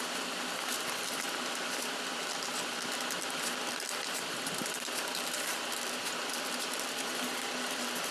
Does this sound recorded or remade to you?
recorded